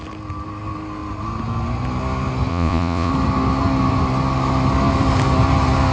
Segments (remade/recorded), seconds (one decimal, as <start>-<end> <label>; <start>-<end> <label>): 0.0-2.5 recorded; 2.5-3.1 remade; 3.1-5.9 recorded